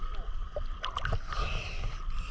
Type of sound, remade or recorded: recorded